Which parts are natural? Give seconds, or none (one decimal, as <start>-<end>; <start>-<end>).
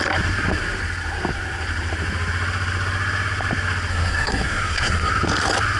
0.0-3.9; 5.1-5.8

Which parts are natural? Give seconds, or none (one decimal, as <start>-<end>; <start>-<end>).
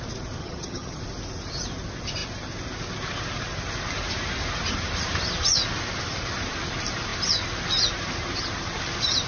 0.0-0.4; 1.0-9.3